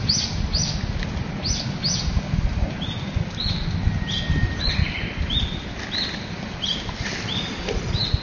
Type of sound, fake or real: real